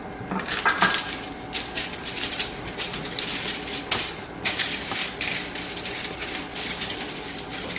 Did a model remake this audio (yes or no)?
yes